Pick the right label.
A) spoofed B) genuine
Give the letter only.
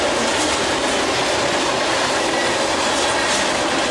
B